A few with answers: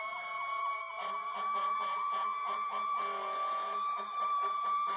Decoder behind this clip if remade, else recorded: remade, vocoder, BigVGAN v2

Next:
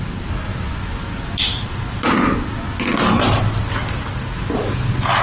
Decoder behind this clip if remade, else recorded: recorded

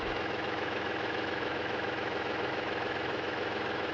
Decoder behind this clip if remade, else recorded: remade, autoencoder, DAC-VAE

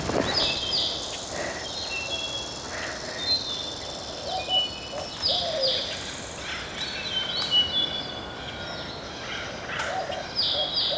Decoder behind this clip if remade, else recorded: recorded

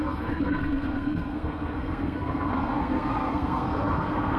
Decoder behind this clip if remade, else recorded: remade, codec, SNAC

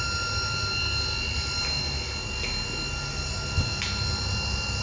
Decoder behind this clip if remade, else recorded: recorded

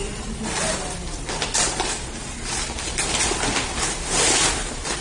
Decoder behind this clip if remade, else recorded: recorded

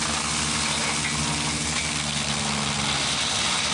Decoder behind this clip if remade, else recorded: recorded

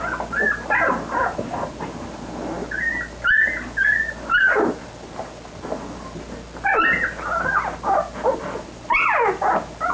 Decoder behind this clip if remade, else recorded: recorded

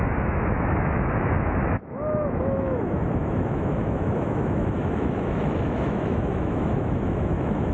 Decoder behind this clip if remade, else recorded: remade, autoencoder, DAC-VAE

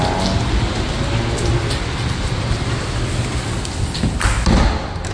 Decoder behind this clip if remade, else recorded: recorded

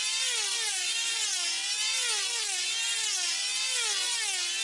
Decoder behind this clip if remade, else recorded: recorded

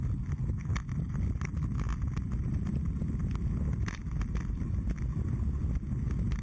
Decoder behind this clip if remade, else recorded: recorded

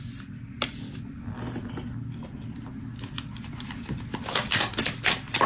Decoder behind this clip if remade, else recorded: recorded